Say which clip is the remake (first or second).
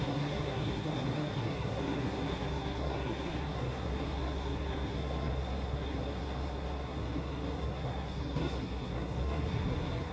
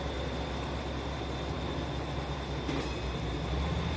first